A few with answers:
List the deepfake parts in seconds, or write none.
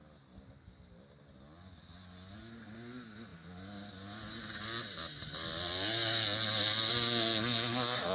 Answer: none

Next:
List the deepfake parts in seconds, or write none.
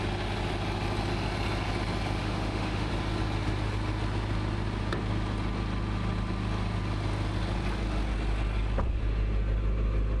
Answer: 2.2-2.9 (autoencoder, DAC-VAE)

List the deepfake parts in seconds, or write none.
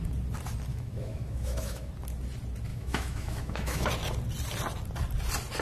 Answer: 0.7-1.9 (autoencoder, DAC-VAE); 2.7-3.9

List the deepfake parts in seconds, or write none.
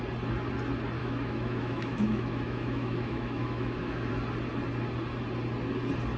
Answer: 1.0-4.1 (autoencoder, DAC-VAE)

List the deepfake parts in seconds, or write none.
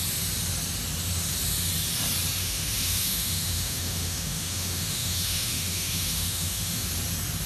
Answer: 2.4-6.9 (autoencoder, DAC-VAE)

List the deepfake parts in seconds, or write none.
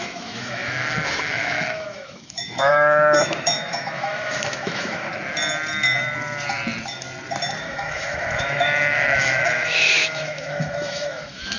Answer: 0.0-5.1 (autoencoder, DAC-VAE); 7.6-11.6